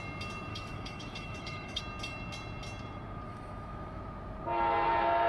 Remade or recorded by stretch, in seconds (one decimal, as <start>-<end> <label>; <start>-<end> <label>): 0.0-0.5 recorded; 0.5-1.8 remade; 1.8-3.3 recorded; 3.3-4.0 remade; 4.0-5.3 recorded